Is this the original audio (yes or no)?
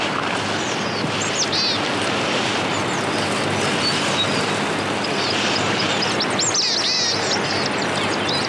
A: yes